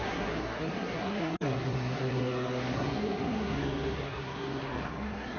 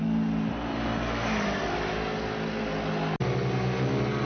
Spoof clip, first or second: first